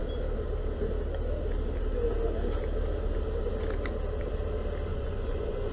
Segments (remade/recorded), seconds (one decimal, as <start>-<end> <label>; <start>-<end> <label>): 0.0-4.9 recorded; 4.9-5.7 remade